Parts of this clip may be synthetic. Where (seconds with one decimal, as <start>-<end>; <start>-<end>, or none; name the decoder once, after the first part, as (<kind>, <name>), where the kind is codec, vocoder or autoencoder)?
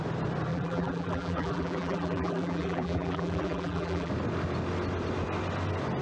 0.5-4.1 (vocoder, BigVGAN v2)